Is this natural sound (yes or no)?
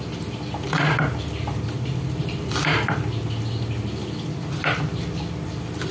yes